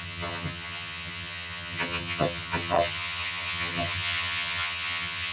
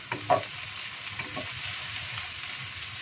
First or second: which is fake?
first